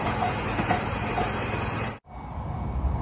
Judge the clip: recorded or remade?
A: recorded